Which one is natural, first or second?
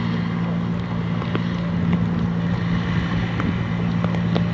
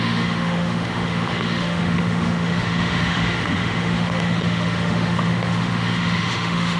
first